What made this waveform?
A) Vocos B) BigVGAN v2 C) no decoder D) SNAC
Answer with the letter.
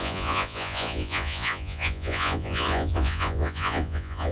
A